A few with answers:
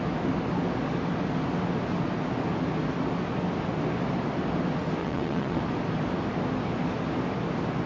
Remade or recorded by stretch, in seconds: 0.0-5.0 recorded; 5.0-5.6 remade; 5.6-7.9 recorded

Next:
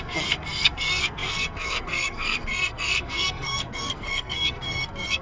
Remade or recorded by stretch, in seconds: 0.0-5.2 remade

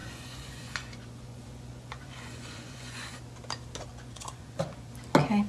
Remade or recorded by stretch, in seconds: 0.0-3.2 remade; 3.2-3.9 recorded; 3.9-4.9 remade; 4.9-5.5 recorded

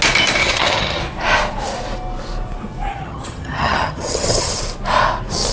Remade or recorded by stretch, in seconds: 0.0-0.4 recorded; 0.4-1.0 remade; 1.0-2.9 recorded; 2.9-4.5 remade; 4.5-5.5 recorded

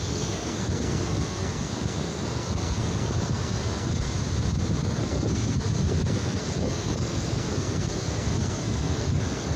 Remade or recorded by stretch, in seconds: 0.0-4.2 remade; 4.2-4.8 recorded; 4.8-9.6 remade

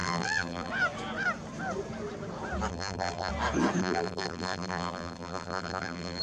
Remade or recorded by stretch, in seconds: 0.0-0.7 remade; 0.7-2.7 recorded; 2.7-3.3 remade; 3.3-3.8 recorded; 3.8-6.2 remade

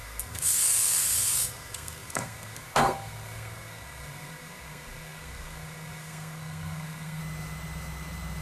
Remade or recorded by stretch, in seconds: 0.0-7.2 remade; 7.2-8.4 recorded

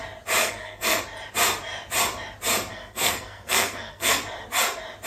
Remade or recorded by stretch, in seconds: 0.0-0.4 recorded; 0.4-1.0 remade; 1.0-2.7 recorded; 2.7-4.2 remade; 4.2-5.1 recorded